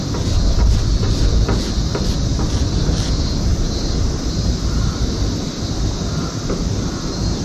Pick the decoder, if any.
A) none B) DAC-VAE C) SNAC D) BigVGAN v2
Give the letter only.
A